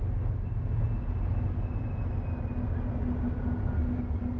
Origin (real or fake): real